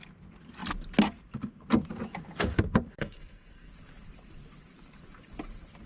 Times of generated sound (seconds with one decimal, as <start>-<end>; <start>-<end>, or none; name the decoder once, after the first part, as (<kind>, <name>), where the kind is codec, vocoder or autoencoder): 2.9-3.7 (codec, SNAC)